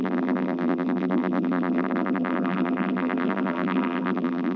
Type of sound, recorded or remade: remade